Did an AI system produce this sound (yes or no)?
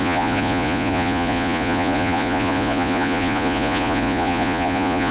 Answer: yes